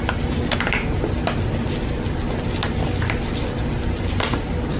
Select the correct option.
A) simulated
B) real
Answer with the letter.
B